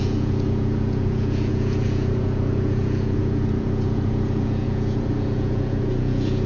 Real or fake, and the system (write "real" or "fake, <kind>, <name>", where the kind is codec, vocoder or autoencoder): fake, vocoder, Vocos